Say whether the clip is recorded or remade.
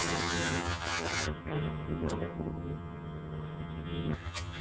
remade